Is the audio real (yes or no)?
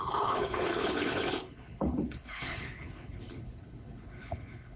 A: no